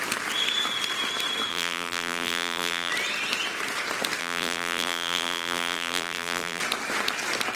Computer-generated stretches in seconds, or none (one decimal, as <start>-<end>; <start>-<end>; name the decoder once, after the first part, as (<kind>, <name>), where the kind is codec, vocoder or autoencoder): 1.5-2.9 (vocoder, BigVGAN v2); 4.2-6.6